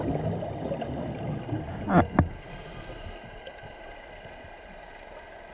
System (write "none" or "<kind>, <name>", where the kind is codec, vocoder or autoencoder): none